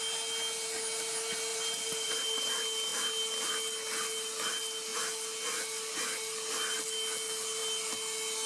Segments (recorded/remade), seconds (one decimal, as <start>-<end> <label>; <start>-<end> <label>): 0.0-8.5 recorded